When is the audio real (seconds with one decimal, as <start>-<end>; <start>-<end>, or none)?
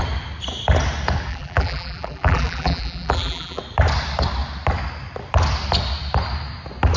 0.0-1.3; 3.6-7.0